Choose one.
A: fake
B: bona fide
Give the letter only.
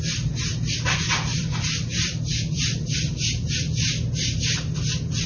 B